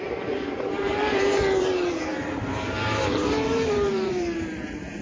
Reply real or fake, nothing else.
fake